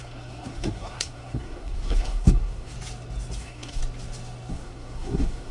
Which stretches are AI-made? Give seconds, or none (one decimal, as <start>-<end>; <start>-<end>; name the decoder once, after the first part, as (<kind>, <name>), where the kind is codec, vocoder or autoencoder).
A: 0.0-2.7 (codec, SNAC); 3.4-3.8; 4.5-5.5